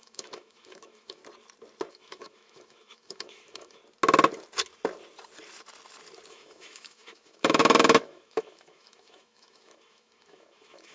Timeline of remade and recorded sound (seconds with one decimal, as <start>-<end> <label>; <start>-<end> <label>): 0.0-1.2 remade; 1.2-1.9 recorded; 1.9-3.8 remade; 3.8-6.3 recorded; 6.3-10.9 remade